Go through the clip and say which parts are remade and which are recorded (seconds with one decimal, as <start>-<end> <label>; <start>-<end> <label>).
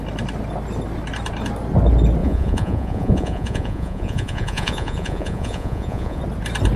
0.0-2.2 recorded; 2.2-6.2 remade; 6.2-6.8 recorded